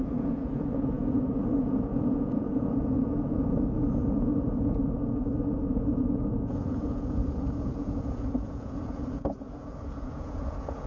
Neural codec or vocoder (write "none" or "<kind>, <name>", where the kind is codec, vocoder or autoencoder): vocoder, Vocos